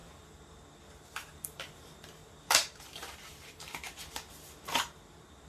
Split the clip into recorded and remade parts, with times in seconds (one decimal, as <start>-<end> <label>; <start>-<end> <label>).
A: 0.0-5.5 remade